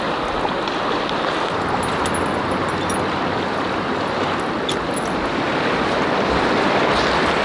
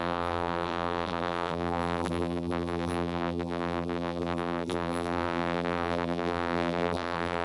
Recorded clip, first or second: first